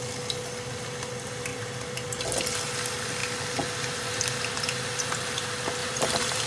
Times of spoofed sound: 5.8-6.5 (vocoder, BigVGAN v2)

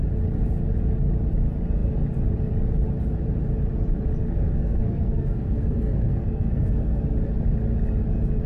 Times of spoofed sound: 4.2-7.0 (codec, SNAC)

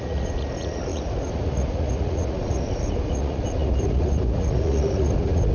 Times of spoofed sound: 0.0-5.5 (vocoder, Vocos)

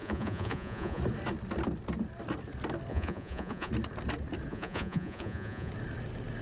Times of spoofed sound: 0.0-1.0 (vocoder, Vocos); 2.9-3.7; 4.5-5.7

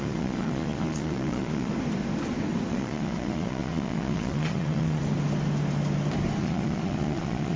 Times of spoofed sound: 0.0-1.7 (vocoder, Vocos); 2.7-5.0; 6.4-7.6

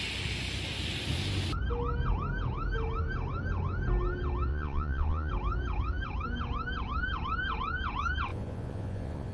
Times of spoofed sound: 4.5-5.3 (vocoder, Vocos); 8.3-9.3

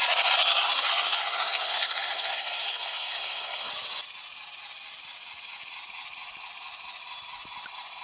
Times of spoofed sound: 0.5-3.7 (codec, SNAC)